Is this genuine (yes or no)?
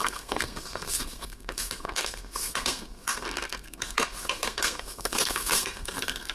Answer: no